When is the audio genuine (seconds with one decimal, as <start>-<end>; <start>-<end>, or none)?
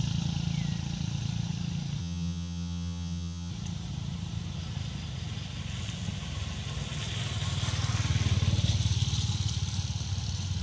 0.0-2.0; 3.5-10.6